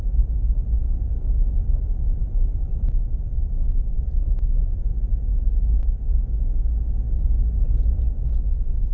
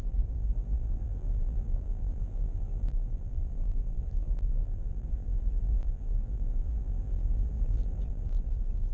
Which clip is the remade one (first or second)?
second